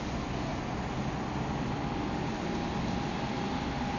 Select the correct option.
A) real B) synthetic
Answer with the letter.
A